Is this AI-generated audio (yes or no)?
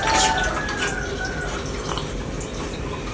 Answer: no